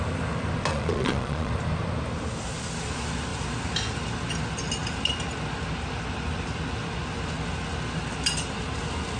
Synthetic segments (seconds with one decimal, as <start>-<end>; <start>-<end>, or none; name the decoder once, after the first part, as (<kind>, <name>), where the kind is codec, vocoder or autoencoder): 0.7-1.5 (vocoder, Vocos)